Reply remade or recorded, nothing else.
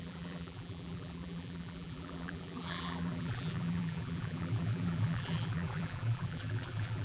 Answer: remade